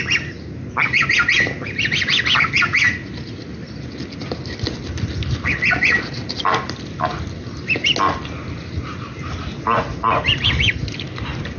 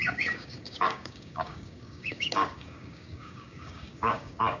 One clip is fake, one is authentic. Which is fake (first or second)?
second